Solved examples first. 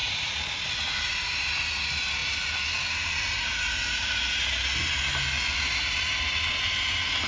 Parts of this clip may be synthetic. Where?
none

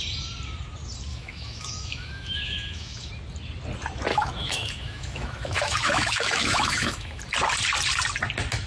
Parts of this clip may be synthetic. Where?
1.1-3.1 (autoencoder, DAC-VAE); 4.1-7.2

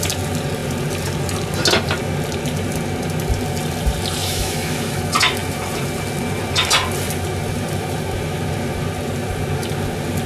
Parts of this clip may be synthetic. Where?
4.2-5.0 (autoencoder, DAC-VAE)

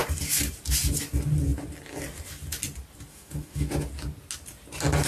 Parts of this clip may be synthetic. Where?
3.1-3.7 (autoencoder, DAC-VAE)

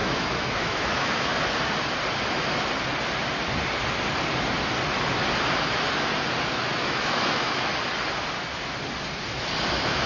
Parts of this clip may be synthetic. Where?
0.0-1.3 (autoencoder, DAC-VAE); 6.5-7.7; 9.7-10.1

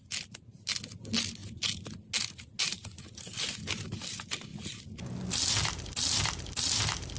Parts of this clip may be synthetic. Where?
none